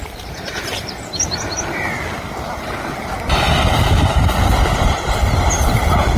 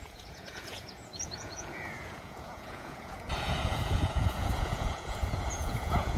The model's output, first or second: second